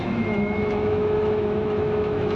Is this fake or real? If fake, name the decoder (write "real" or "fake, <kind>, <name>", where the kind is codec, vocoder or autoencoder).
fake, autoencoder, DAC-VAE